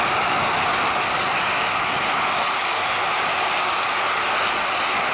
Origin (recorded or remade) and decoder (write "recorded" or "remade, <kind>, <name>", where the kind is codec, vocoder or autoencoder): recorded